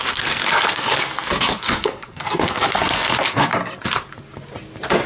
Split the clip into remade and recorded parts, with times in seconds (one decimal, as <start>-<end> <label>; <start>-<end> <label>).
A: 0.0-3.5 remade; 3.5-5.1 recorded